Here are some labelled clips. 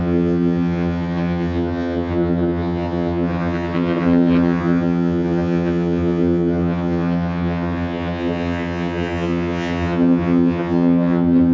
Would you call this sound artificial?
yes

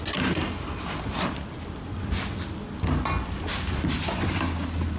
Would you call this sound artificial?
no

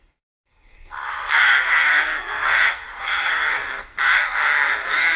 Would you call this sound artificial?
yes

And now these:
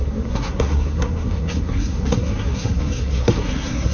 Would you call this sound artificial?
yes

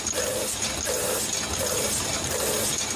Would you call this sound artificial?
no